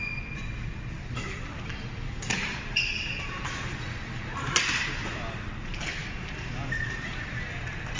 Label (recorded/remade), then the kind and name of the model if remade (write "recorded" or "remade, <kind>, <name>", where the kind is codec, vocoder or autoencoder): recorded